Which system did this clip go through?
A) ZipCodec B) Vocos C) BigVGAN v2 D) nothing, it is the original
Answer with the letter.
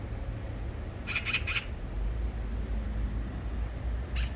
D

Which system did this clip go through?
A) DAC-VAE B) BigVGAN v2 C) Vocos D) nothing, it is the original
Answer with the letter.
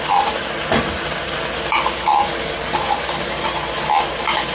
D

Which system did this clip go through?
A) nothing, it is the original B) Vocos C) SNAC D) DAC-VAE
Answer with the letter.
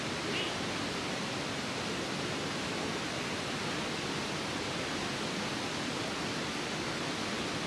A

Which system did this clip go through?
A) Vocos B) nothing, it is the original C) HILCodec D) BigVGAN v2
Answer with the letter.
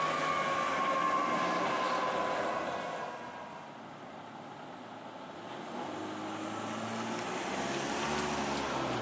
B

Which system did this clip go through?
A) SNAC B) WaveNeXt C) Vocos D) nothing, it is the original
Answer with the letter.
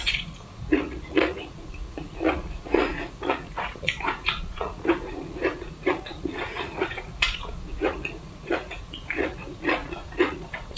C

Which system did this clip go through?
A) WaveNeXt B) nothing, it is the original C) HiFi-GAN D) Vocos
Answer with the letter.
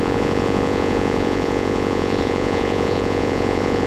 D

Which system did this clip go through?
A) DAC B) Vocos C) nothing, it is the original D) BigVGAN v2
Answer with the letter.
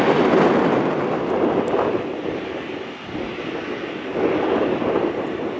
C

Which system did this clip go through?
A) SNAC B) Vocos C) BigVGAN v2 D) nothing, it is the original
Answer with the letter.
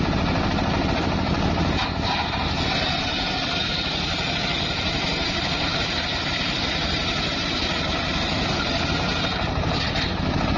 D